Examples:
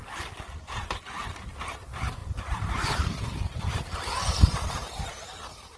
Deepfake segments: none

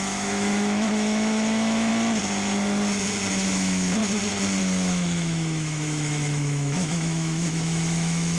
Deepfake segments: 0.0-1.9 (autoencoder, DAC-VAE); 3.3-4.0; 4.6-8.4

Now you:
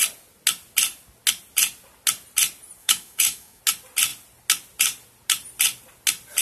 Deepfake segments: 2.8-3.6 (autoencoder, DAC-VAE)

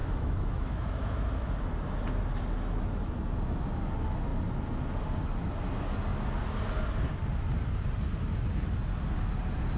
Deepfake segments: 0.0-1.5 (autoencoder, DAC-VAE)

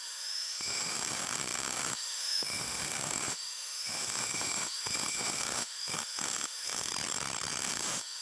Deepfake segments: 0.0-6.9 (autoencoder, DAC-VAE); 7.6-8.2

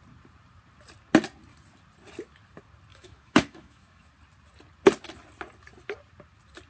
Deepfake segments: 2.9-4.1 (autoencoder, DAC-VAE)

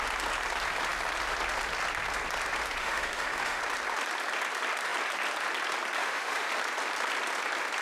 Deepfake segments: 2.8-3.6 (autoencoder, DAC-VAE); 6.0-6.5

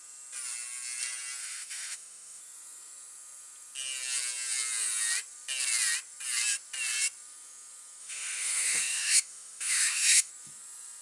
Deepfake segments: 1.4-2.4 (autoencoder, DAC-VAE); 8.0-10.3